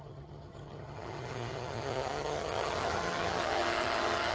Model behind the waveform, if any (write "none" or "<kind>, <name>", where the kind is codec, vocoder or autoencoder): vocoder, HiFi-GAN